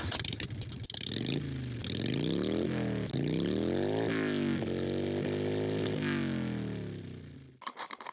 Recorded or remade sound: recorded